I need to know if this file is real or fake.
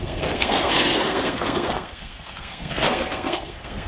fake